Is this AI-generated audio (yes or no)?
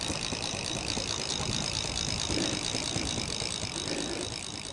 no